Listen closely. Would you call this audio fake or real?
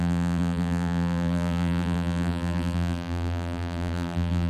fake